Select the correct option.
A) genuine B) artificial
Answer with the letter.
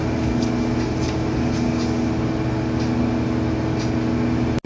A